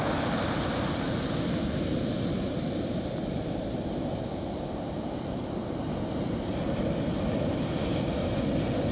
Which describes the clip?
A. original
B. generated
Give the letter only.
A